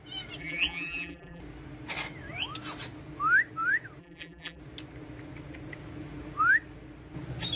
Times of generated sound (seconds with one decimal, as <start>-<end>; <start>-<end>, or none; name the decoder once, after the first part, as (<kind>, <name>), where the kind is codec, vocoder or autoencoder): 0.4-1.4 (vocoder, BigVGAN v2); 4.0-4.6